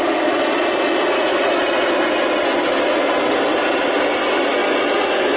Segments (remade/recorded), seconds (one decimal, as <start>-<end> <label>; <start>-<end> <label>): 0.0-5.4 recorded